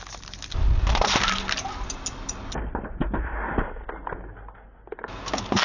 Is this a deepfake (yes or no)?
no